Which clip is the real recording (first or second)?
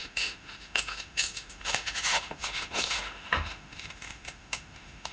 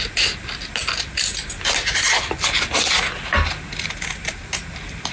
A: second